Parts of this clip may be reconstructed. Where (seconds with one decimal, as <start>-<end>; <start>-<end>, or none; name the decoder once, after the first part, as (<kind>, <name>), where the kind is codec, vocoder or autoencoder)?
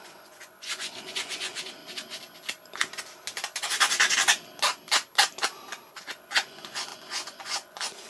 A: 0.0-1.8 (vocoder, Vocos); 5.9-8.1